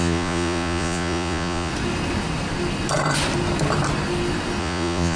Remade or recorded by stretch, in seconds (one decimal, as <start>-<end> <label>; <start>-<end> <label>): 0.0-1.7 remade; 1.7-4.6 recorded; 4.6-5.2 remade